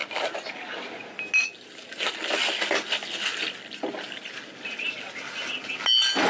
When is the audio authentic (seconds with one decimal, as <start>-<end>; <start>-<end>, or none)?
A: 0.0-6.3

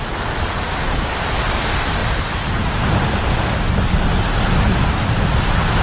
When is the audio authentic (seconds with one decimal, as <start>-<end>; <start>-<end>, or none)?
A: 0.0-2.0; 2.8-5.8

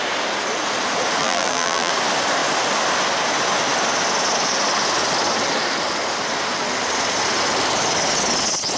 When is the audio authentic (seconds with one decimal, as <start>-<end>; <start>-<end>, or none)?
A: 0.0-1.2; 1.9-8.8

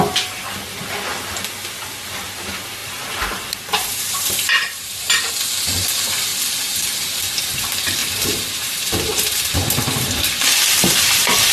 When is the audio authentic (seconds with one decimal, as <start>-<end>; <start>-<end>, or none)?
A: 0.0-2.8; 5.3-8.0

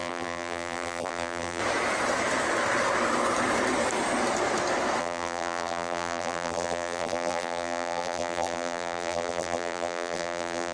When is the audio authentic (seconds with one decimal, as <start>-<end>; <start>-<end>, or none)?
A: 1.6-5.0